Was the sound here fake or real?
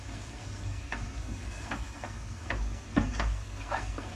fake